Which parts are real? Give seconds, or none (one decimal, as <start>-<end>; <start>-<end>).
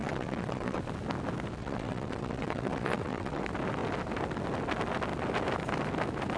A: 0.8-1.6; 3.4-6.4